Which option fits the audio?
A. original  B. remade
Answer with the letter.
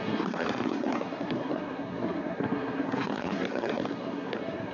B